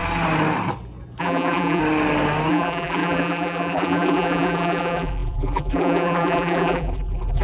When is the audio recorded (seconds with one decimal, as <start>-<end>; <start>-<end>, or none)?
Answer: 0.0-1.2; 1.8-2.5